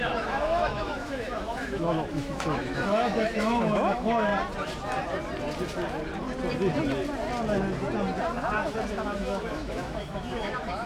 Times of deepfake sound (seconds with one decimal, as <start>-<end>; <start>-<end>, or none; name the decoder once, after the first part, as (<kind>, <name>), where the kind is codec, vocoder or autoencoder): 0.0-4.3 (autoencoder, DAC-VAE); 8.9-10.9